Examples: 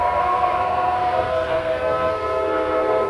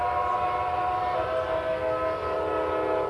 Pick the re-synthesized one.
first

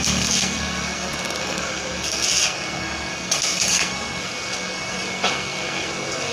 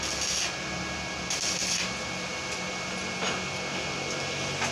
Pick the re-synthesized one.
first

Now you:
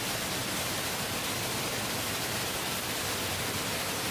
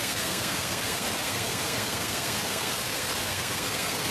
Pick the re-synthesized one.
second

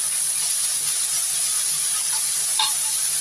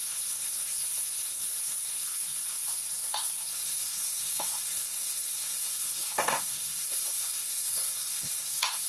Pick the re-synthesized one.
second